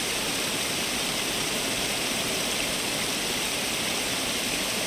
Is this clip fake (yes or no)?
yes